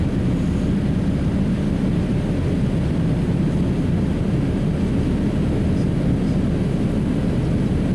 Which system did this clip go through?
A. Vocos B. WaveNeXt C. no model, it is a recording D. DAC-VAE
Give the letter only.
C